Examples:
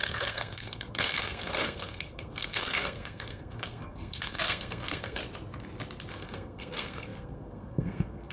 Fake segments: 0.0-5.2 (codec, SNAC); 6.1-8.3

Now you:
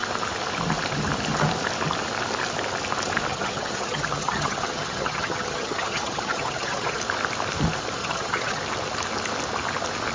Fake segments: 3.3-7.0 (vocoder, HiFi-GAN); 8.0-8.6